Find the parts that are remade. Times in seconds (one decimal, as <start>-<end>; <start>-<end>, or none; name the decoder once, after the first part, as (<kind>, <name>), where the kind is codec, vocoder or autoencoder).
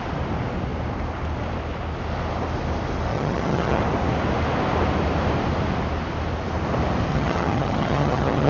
3.1-3.8 (vocoder, HiFi-GAN); 7.1-8.5